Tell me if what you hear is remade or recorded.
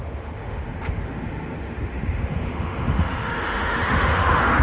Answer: remade